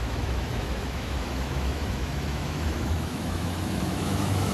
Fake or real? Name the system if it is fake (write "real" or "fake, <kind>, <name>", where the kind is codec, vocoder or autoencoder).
fake, autoencoder, DAC-VAE